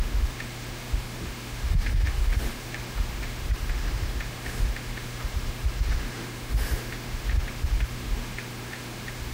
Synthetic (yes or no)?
yes